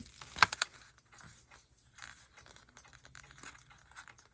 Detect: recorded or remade recorded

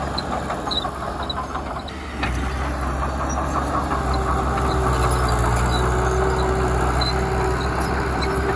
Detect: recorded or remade recorded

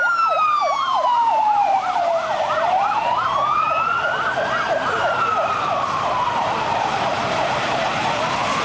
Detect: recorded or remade recorded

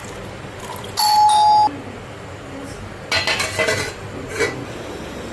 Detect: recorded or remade recorded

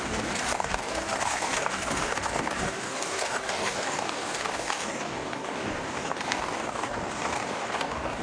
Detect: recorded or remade remade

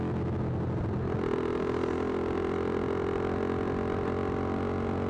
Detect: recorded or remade recorded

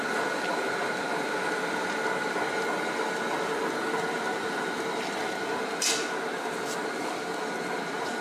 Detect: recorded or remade recorded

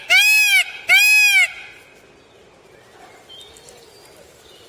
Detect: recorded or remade recorded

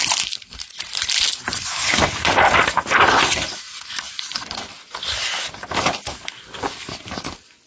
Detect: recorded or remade recorded